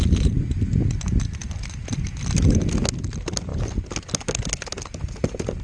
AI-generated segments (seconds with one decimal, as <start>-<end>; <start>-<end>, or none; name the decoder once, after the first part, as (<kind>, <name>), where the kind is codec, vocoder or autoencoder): none